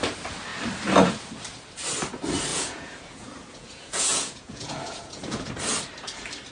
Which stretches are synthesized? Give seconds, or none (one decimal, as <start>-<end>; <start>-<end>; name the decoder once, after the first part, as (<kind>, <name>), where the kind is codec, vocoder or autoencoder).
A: 2.5-5.5 (vocoder, Vocos)